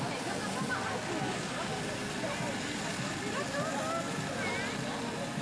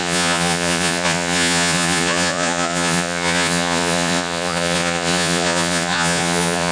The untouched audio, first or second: first